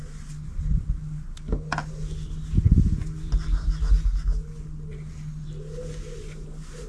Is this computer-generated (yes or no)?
no